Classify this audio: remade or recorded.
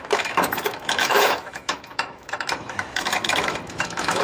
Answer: remade